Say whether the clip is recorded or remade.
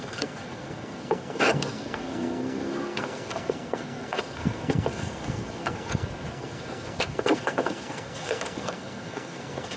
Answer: remade